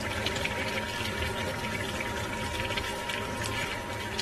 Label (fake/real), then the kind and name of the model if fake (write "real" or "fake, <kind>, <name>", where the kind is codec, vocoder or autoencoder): real